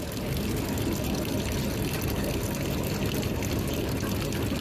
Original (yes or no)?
yes